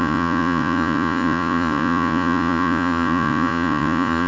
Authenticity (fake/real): fake